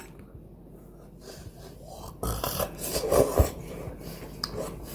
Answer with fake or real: real